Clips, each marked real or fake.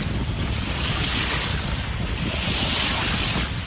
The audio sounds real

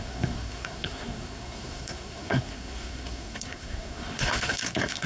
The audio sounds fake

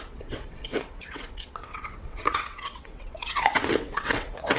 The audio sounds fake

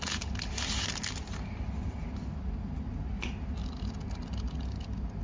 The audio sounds real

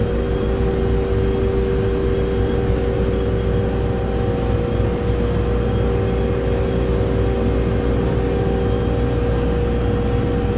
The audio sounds real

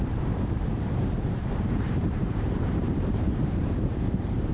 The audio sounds fake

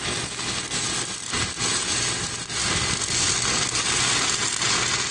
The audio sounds real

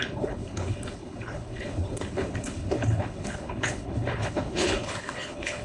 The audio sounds fake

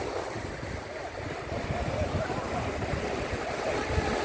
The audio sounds real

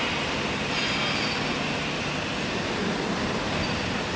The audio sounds real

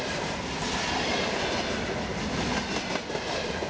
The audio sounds real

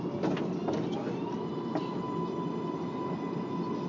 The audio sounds real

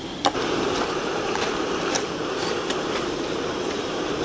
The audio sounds fake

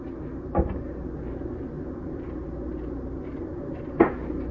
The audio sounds real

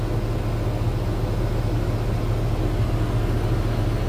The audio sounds real